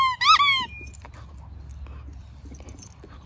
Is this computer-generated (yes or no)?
no